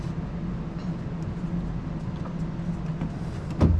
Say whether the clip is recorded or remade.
recorded